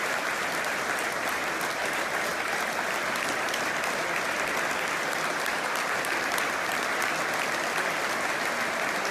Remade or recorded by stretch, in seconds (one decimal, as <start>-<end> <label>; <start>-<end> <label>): 0.0-2.3 recorded; 2.3-3.3 remade; 3.3-9.1 recorded